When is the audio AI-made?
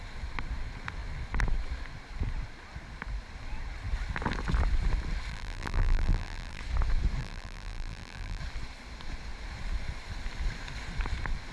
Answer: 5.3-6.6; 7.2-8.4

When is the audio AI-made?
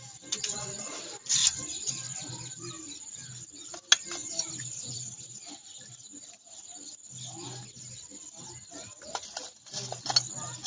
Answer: 1.4-2.8; 4.2-5.7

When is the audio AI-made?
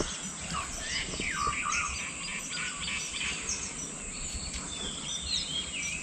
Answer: none